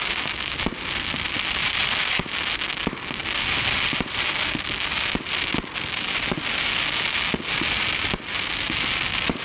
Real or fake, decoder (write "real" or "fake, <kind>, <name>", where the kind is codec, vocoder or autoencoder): real